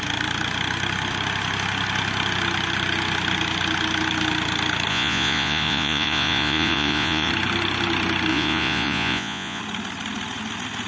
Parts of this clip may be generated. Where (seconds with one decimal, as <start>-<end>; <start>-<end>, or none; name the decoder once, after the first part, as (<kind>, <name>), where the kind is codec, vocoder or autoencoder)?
4.9-7.3 (vocoder, Vocos); 8.3-9.6